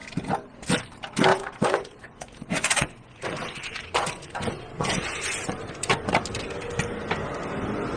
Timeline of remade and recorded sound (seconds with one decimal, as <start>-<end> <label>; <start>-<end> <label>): 0.0-1.3 recorded; 1.3-6.1 remade; 6.1-8.0 recorded